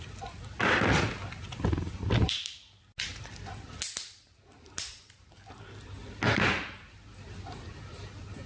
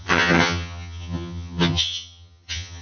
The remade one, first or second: second